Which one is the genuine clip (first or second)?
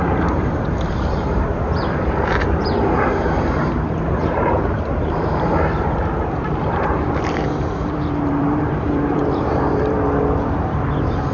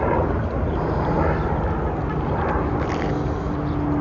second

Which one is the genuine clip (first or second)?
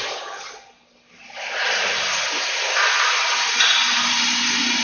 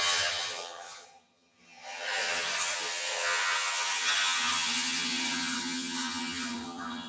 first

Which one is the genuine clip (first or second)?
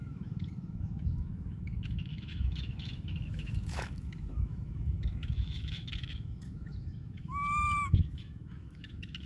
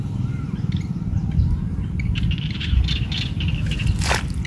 second